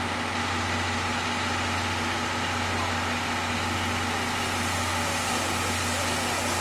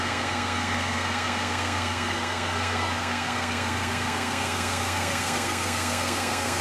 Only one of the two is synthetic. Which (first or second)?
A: second